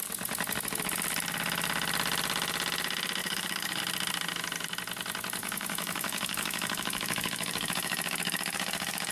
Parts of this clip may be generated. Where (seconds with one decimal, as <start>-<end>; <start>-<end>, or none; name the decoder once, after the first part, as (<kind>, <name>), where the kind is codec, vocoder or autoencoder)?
3.2-3.8 (codec, DAC); 5.4-9.1